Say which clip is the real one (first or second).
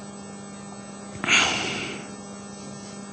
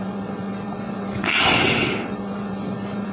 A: first